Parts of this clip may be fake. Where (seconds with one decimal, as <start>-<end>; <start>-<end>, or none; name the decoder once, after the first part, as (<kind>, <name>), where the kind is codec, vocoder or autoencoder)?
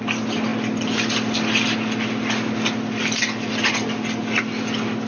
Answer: none